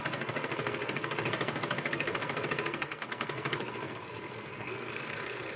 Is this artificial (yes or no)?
yes